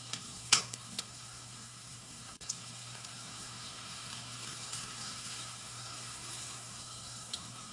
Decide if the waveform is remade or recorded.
remade